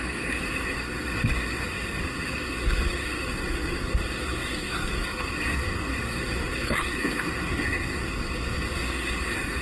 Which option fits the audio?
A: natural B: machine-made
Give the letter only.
B